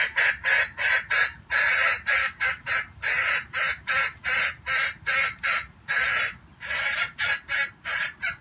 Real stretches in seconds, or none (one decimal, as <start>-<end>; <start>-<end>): 0.0-2.2; 2.7-8.4